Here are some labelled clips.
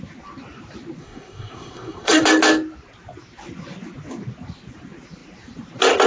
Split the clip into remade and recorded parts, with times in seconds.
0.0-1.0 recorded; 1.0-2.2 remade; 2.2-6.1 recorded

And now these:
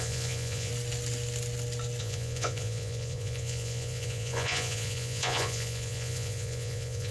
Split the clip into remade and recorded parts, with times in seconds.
0.0-0.7 remade; 0.7-2.0 recorded; 2.0-7.1 remade

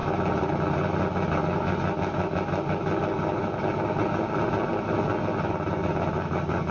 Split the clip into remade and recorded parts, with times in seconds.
0.0-6.7 recorded

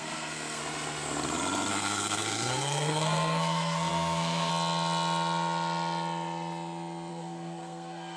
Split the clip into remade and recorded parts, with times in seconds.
0.0-0.6 remade; 0.6-1.7 recorded; 1.7-4.5 remade; 4.5-7.1 recorded; 7.1-8.2 remade

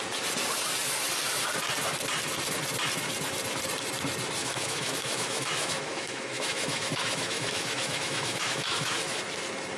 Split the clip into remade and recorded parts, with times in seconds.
0.0-4.4 recorded; 4.4-9.2 remade; 9.2-9.8 recorded

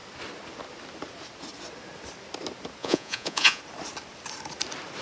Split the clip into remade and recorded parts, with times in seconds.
0.0-2.8 recorded; 2.8-3.6 remade; 3.6-5.0 recorded

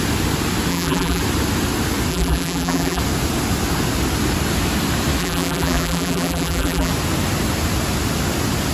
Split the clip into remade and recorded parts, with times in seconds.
0.0-0.7 recorded; 0.7-1.2 remade; 1.2-2.1 recorded; 2.1-3.0 remade; 3.0-5.2 recorded; 5.2-6.9 remade; 6.9-8.7 recorded